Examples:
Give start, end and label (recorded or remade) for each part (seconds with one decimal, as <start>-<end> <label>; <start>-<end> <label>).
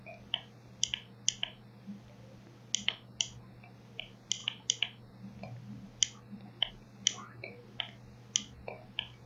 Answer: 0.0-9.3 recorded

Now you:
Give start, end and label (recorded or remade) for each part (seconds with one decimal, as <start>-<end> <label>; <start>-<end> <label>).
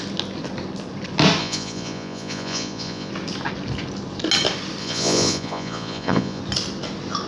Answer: 0.0-1.4 recorded; 1.4-3.1 remade; 3.1-4.8 recorded; 4.8-6.4 remade; 6.4-7.3 recorded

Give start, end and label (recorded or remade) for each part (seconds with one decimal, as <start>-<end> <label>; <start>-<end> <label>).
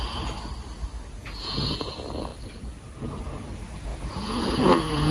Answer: 0.0-1.2 recorded; 1.2-1.9 remade; 1.9-3.9 recorded; 3.9-5.1 remade